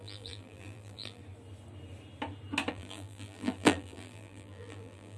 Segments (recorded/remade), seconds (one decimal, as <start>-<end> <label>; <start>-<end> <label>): 0.0-1.2 remade; 1.2-2.7 recorded; 2.7-5.2 remade